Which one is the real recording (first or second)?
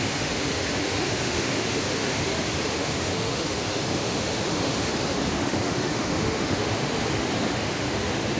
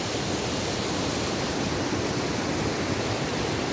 second